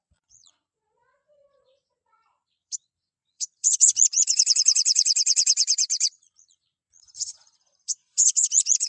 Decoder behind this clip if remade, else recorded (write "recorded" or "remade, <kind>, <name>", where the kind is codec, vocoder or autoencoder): remade, vocoder, Vocos